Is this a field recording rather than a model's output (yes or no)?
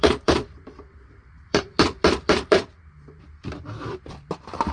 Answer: no